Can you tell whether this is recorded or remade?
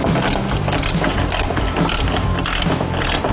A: recorded